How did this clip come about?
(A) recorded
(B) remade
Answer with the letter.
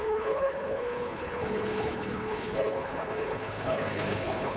B